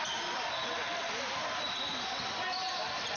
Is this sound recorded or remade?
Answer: recorded